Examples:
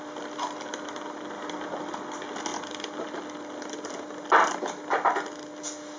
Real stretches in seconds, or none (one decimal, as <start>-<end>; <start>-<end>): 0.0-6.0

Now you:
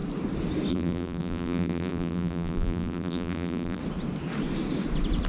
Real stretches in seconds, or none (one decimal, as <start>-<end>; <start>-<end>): 0.0-0.7; 3.8-5.3

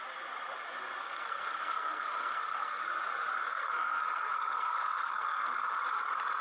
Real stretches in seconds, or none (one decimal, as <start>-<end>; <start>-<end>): 0.0-1.0; 2.8-3.4; 5.6-6.4

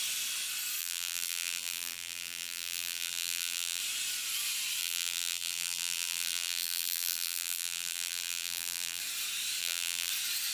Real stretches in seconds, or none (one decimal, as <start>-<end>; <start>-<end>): 0.0-0.8; 3.8-4.8; 9.0-9.6; 10.1-10.5

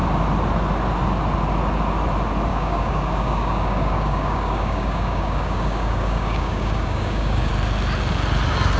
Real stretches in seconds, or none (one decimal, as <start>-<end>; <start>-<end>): 0.0-2.5; 7.5-8.8

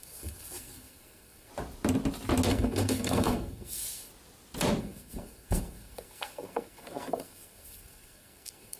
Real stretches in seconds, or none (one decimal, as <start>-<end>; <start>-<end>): 1.5-2.5; 4.1-4.8

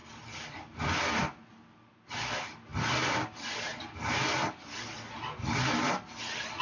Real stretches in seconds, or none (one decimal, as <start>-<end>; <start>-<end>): 0.0-6.6

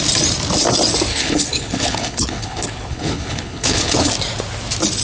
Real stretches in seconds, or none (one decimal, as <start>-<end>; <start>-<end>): 0.0-1.1; 4.1-5.0